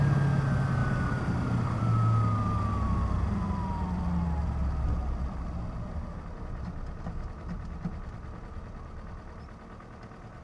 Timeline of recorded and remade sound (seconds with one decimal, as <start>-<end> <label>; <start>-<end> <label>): 0.0-0.8 recorded; 0.8-1.8 remade; 1.8-10.4 recorded